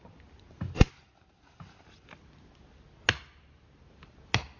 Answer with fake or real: real